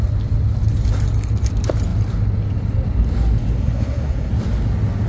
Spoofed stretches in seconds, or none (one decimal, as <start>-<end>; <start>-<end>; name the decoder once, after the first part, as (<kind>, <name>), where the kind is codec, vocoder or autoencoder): 3.6-4.3 (codec, SNAC)